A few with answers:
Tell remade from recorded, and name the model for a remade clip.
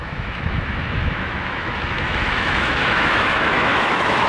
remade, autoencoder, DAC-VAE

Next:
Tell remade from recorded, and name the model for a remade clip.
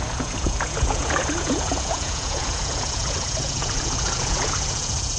remade, vocoder, Vocos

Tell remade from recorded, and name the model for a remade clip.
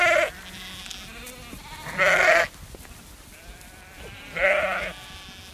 recorded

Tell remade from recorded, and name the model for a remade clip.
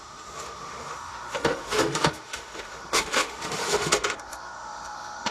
remade, autoencoder, DAC-VAE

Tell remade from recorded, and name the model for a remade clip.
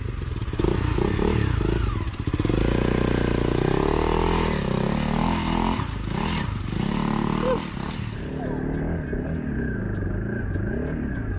recorded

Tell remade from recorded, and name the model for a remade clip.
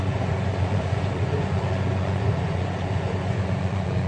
remade, vocoder, Vocos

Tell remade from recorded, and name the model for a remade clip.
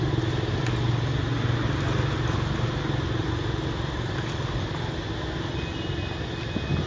recorded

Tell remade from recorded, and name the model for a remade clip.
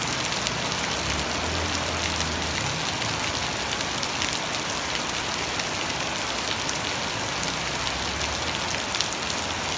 recorded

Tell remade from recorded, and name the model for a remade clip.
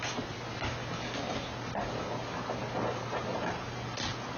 recorded